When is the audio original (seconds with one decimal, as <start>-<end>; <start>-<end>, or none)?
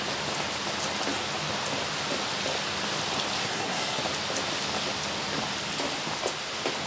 0.0-3.4; 4.0-6.9